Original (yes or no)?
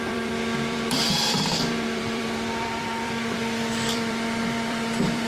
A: no